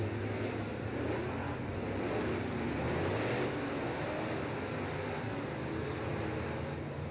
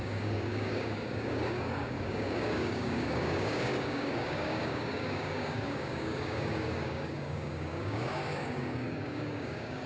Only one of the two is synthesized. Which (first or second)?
second